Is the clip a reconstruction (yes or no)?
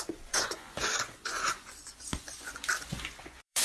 yes